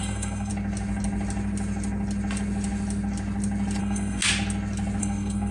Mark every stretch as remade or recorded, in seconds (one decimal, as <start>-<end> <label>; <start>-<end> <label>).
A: 0.0-0.5 remade; 0.5-3.8 recorded; 3.8-4.2 remade; 4.2-5.0 recorded; 5.0-5.5 remade